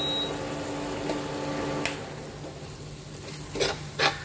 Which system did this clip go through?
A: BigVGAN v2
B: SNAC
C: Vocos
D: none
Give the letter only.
D